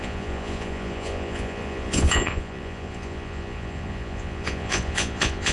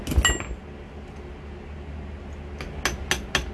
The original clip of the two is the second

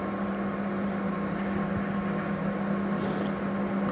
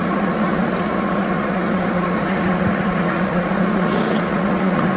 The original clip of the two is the first